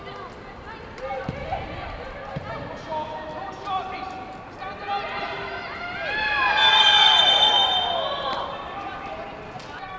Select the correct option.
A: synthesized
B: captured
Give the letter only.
B